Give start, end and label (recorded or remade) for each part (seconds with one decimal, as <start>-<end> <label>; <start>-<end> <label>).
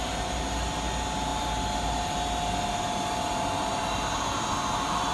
0.0-5.1 recorded